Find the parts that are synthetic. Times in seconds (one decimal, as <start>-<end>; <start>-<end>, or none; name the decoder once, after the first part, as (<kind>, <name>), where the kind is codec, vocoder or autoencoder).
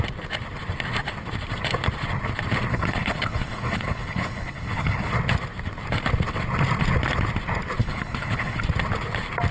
2.7-5.1 (codec, HILCodec); 7.8-8.6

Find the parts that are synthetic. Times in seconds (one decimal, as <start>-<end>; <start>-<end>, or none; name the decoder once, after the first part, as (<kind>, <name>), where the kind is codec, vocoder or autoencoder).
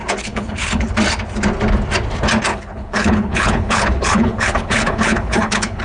0.0-0.9 (codec, HILCodec); 2.5-5.8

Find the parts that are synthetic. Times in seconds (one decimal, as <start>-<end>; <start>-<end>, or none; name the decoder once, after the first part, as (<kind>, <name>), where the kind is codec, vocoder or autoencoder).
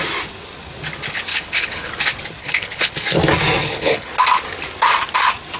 1.3-1.9 (codec, HILCodec); 2.4-2.9; 3.6-4.1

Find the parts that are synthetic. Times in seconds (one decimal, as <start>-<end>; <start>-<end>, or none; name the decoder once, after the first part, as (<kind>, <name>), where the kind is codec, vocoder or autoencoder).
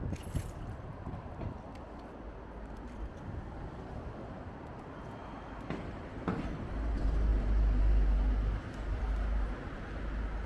none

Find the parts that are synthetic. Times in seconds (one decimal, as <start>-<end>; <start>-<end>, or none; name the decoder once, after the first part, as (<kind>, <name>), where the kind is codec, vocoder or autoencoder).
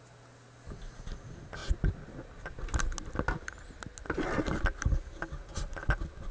none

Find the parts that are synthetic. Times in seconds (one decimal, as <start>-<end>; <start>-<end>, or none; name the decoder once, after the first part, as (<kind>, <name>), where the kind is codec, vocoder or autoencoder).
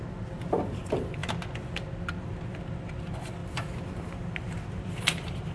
none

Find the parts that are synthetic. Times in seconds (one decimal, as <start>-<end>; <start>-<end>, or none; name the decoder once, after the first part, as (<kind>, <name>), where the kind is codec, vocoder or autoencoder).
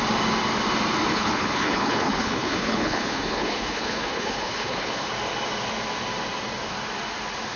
1.1-5.1 (codec, HILCodec)